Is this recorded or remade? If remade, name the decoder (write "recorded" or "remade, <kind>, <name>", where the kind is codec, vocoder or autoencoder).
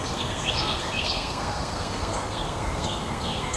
remade, codec, SNAC